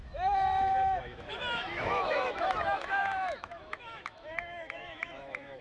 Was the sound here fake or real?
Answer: fake